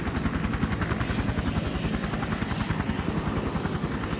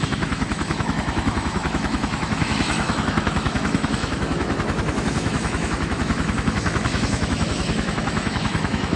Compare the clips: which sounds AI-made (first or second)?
second